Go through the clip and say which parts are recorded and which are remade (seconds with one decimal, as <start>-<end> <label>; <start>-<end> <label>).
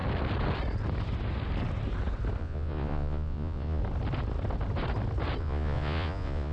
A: 0.0-2.4 recorded; 2.4-3.8 remade; 3.8-5.4 recorded; 5.4-6.5 remade